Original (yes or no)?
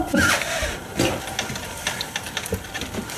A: yes